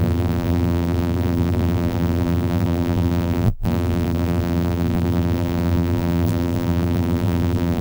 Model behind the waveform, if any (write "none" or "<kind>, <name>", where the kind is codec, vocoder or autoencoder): vocoder, BigVGAN v2